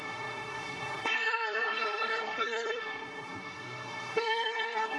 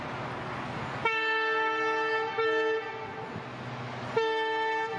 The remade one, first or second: first